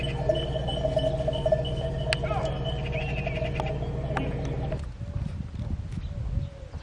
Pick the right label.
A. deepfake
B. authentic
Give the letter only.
B